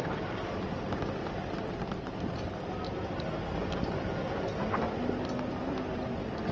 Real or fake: real